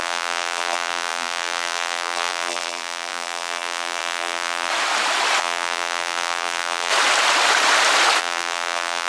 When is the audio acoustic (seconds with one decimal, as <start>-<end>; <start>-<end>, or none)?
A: 4.7-5.4; 6.9-8.2